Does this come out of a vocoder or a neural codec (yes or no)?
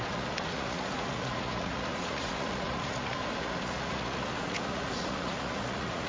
yes